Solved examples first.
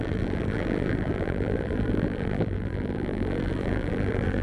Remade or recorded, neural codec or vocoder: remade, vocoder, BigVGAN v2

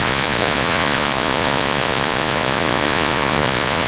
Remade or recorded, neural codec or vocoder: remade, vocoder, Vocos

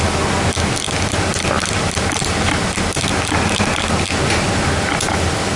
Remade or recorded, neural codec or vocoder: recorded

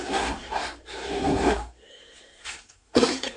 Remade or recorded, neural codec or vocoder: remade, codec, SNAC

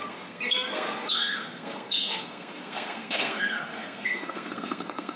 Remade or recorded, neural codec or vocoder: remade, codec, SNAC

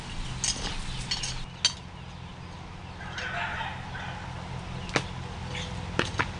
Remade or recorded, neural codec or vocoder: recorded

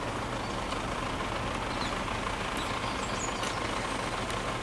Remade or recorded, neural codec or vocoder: recorded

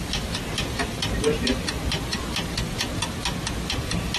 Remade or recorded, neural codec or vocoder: recorded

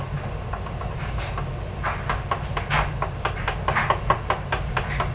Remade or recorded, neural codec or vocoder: recorded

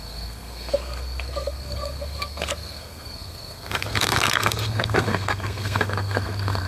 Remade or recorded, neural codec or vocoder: remade, codec, SNAC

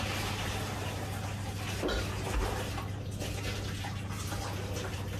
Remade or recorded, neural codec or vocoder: recorded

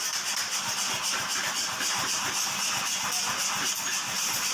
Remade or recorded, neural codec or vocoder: recorded